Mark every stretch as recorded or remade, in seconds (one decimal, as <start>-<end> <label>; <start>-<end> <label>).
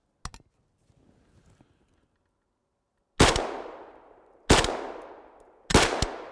0.0-6.3 recorded